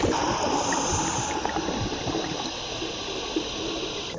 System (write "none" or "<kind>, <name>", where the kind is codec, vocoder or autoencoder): none